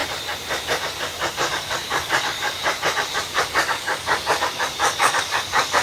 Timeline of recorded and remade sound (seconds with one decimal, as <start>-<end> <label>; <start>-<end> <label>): 0.0-1.3 recorded; 1.3-2.6 remade; 2.6-3.1 recorded; 3.1-5.8 remade

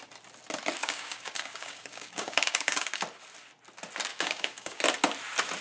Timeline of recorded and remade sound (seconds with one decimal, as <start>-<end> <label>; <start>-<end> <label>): 0.0-0.8 recorded; 0.8-3.0 remade; 3.0-4.1 recorded; 4.1-4.8 remade; 4.8-5.6 recorded

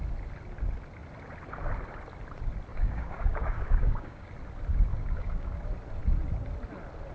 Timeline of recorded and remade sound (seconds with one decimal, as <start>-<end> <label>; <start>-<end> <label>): 0.0-2.7 recorded; 2.7-4.3 remade; 4.3-4.9 recorded; 4.9-5.6 remade; 5.6-7.1 recorded

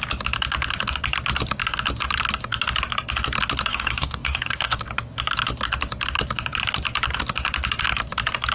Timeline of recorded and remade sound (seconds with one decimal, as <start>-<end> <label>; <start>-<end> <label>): 0.0-3.7 recorded; 3.7-4.8 remade; 4.8-8.5 recorded